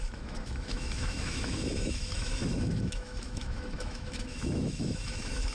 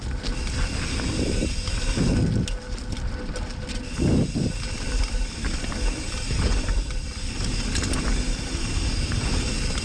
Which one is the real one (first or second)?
second